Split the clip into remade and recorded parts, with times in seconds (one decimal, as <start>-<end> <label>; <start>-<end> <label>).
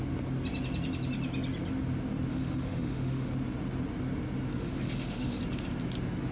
0.0-2.3 recorded; 2.3-3.3 remade; 3.3-4.5 recorded; 4.5-5.4 remade; 5.4-6.3 recorded